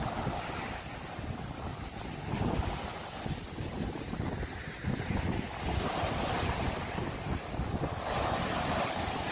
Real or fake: real